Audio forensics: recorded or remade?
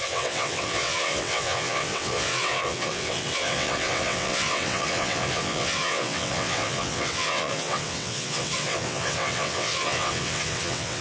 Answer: remade